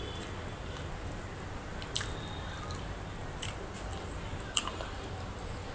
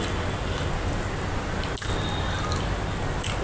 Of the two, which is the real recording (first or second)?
second